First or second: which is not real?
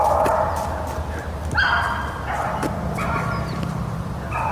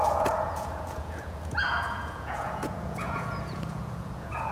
second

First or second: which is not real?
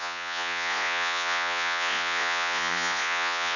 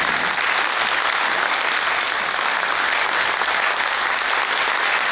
first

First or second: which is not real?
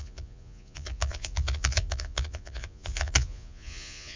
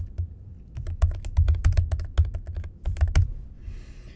first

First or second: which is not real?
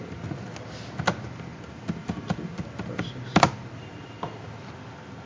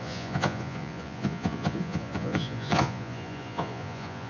second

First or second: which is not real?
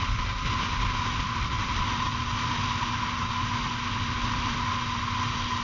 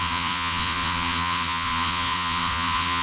second